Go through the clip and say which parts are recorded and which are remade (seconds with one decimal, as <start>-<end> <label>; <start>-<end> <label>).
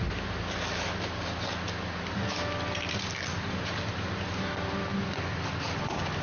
0.0-5.3 recorded; 5.3-6.2 remade